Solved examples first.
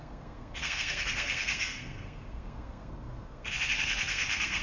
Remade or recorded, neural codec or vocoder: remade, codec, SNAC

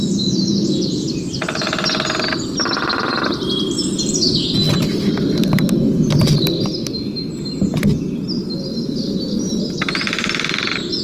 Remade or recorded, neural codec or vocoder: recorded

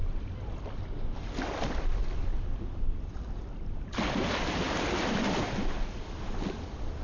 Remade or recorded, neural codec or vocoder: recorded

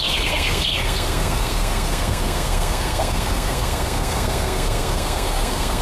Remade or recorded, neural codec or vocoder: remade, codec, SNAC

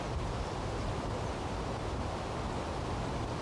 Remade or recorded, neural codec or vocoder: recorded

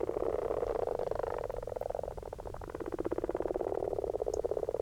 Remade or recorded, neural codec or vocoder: recorded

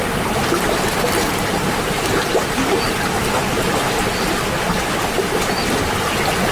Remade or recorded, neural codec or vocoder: recorded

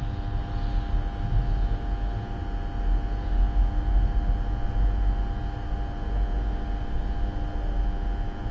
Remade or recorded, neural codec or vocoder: recorded